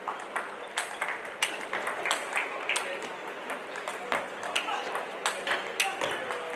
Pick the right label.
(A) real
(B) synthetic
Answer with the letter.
A